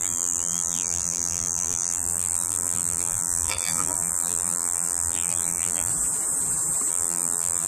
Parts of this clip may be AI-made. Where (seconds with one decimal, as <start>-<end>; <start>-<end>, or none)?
0.0-5.9; 6.9-7.7

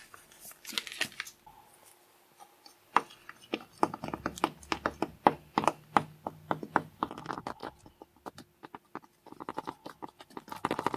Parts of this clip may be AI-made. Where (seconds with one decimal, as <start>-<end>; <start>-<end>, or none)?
none

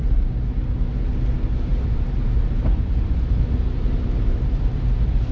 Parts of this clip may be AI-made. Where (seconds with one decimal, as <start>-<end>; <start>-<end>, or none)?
1.7-5.3

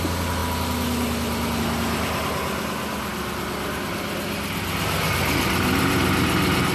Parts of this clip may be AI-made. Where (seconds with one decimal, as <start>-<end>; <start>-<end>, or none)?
none

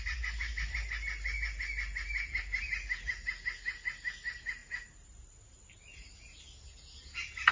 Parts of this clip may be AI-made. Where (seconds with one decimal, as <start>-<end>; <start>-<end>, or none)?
none

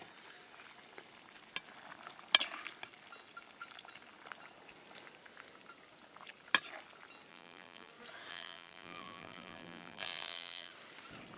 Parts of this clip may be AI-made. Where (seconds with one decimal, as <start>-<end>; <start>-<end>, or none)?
7.3-7.9; 8.3-10.7

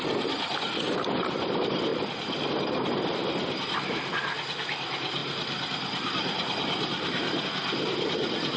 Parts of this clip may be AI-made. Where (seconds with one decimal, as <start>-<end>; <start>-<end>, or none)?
5.2-7.4